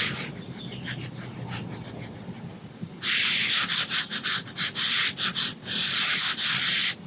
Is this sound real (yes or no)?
yes